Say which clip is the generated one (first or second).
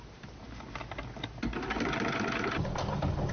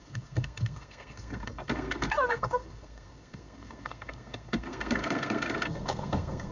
second